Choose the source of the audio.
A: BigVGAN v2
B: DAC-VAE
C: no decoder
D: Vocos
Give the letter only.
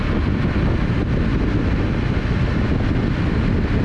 C